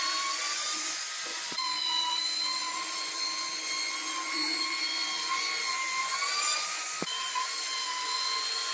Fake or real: fake